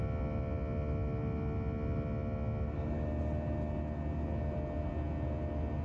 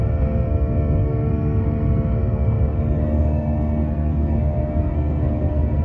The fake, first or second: second